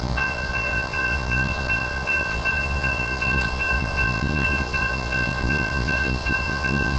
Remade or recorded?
remade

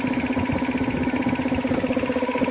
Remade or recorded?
recorded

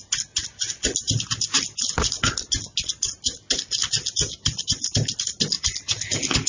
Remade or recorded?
recorded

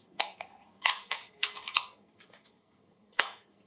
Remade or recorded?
remade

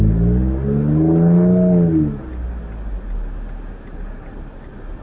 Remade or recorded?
recorded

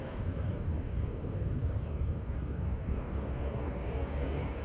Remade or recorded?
remade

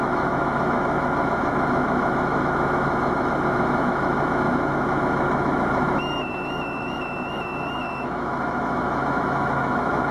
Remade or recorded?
remade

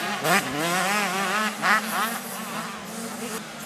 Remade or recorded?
recorded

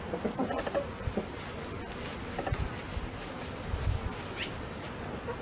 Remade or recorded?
recorded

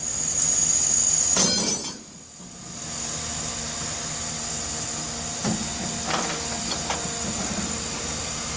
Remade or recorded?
recorded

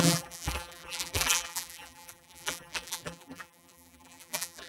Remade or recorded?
remade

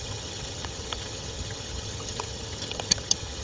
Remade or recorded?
remade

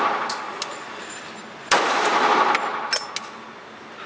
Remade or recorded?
recorded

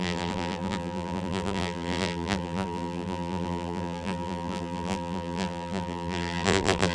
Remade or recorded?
remade